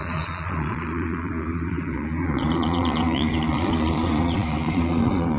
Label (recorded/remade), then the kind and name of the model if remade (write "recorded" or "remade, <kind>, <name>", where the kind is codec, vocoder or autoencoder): remade, vocoder, Vocos